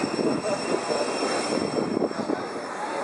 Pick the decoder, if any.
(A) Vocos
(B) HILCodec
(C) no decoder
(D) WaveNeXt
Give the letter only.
C